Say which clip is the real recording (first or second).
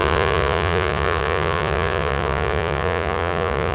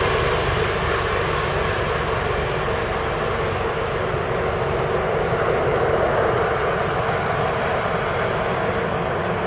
second